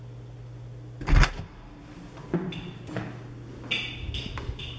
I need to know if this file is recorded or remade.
recorded